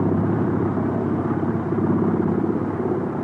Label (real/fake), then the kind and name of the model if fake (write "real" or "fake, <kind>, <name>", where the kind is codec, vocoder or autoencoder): fake, vocoder, BigVGAN v2